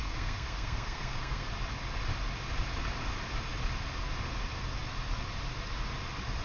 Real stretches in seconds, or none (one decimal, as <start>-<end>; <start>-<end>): 1.5-6.4